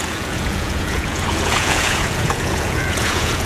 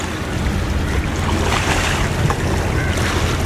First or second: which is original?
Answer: second